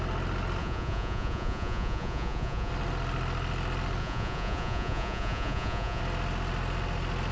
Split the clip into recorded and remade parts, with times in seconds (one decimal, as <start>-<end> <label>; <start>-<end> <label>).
0.0-0.6 recorded; 0.6-2.7 remade; 2.7-4.0 recorded; 4.0-6.0 remade; 6.0-7.3 recorded